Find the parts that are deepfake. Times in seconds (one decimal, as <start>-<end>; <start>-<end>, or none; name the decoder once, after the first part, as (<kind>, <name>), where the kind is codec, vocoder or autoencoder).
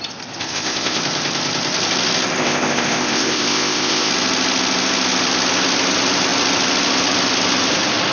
0.4-1.0 (codec, ZipCodec); 2.4-4.1